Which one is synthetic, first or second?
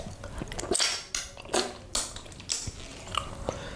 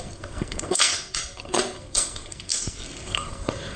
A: second